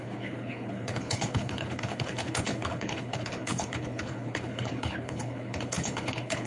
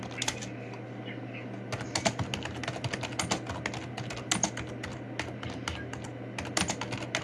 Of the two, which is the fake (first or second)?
first